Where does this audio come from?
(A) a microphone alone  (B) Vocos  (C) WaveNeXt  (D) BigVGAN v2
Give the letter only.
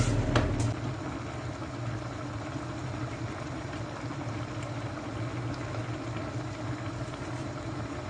A